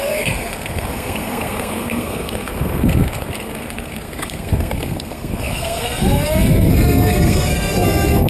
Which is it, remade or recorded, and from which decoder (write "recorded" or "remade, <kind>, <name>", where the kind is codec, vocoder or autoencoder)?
remade, codec, SNAC